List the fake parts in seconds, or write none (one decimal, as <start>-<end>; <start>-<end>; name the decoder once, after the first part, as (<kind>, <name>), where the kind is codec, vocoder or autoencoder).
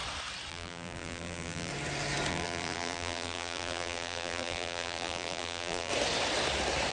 0.5-1.7 (vocoder, BigVGAN v2); 2.3-5.9